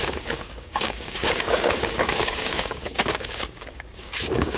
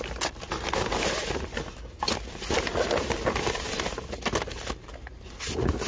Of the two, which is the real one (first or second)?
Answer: second